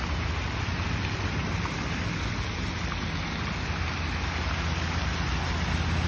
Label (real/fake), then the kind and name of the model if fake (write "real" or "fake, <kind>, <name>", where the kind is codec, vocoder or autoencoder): real